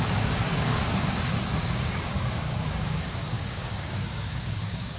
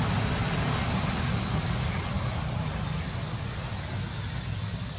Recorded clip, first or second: second